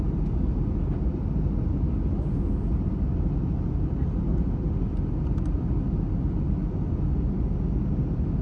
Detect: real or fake real